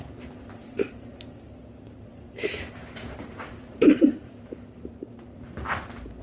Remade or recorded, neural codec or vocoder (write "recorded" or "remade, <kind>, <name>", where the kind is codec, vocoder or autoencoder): remade, vocoder, BigVGAN v2